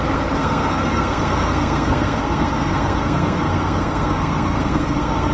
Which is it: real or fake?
fake